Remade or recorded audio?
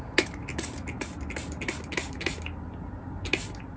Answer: recorded